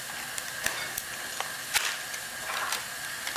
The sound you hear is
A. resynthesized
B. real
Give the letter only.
B